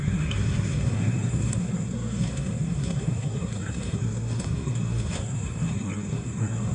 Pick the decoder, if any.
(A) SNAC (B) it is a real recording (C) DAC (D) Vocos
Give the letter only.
A